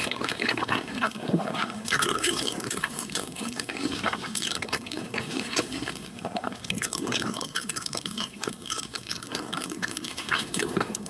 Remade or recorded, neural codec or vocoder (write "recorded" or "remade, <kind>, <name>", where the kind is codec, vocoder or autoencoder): remade, codec, SNAC